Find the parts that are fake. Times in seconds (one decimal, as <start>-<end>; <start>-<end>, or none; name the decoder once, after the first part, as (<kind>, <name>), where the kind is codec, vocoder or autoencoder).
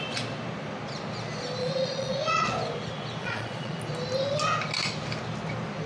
1.6-2.5 (vocoder, Vocos); 3.2-3.8